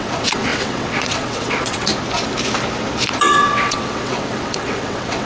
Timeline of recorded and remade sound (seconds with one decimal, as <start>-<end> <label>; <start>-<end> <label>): 0.0-1.9 remade; 1.9-3.2 recorded; 3.2-5.3 remade